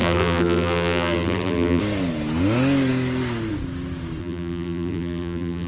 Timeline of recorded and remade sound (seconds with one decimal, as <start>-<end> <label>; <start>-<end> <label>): 0.0-1.8 remade; 1.8-4.2 recorded; 4.2-5.7 remade

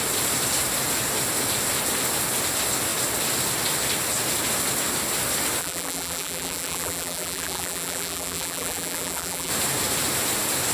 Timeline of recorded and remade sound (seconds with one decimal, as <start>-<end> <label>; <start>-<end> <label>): 0.0-5.6 recorded; 5.6-9.5 remade; 9.5-10.7 recorded

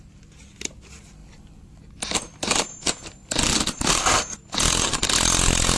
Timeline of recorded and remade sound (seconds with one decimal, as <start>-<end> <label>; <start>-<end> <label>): 0.0-1.2 recorded; 1.2-2.6 remade; 2.6-3.2 recorded; 3.2-4.1 remade; 4.1-5.8 recorded